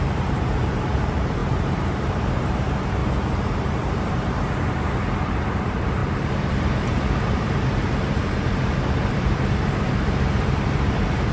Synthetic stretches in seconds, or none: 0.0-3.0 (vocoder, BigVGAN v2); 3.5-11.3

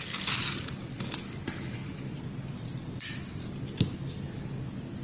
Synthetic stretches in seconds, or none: none

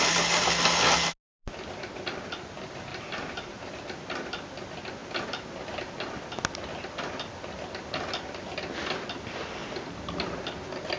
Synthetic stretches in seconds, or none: 2.9-3.7 (vocoder, BigVGAN v2)

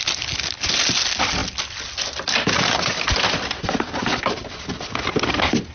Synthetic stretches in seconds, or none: none